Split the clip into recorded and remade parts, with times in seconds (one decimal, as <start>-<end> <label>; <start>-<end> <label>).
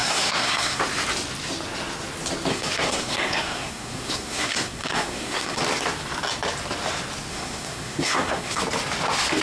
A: 0.0-0.8 remade; 0.8-2.5 recorded; 2.5-5.6 remade; 5.6-7.3 recorded; 7.3-8.6 remade; 8.6-9.4 recorded